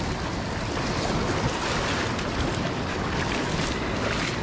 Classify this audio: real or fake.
real